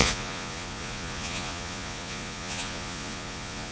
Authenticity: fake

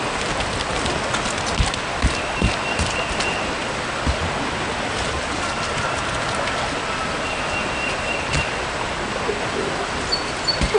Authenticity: real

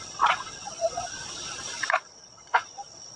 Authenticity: fake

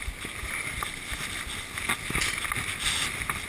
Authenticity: real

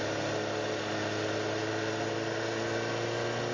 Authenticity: real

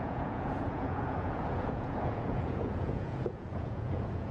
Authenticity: fake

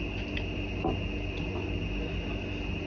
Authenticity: real